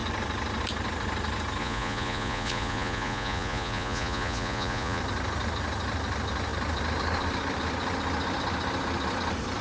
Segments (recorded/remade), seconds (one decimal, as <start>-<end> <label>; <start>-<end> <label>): 0.0-1.6 recorded; 1.6-5.0 remade; 5.0-9.6 recorded